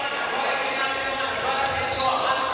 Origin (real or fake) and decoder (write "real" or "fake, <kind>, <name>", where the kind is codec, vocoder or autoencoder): real